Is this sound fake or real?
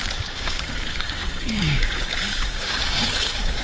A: fake